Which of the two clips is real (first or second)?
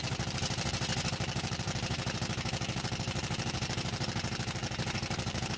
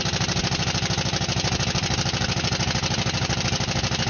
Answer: second